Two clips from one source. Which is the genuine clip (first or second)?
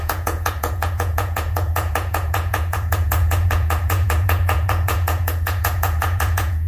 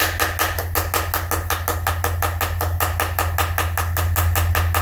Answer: second